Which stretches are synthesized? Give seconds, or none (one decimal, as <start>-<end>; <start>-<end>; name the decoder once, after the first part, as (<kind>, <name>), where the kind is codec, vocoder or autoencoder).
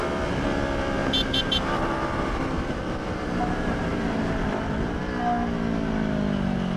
1.0-4.4 (vocoder, BigVGAN v2)